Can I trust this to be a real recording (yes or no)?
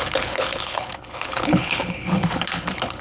no